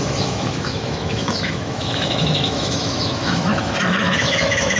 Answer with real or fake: fake